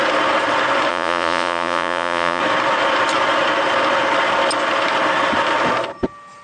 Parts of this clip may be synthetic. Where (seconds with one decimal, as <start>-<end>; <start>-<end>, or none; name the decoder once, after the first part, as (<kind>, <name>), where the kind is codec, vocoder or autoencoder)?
0.9-2.4 (vocoder, Vocos)